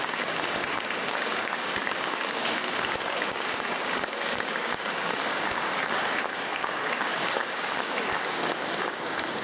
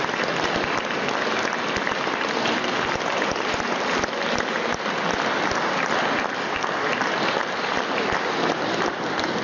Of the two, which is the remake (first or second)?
first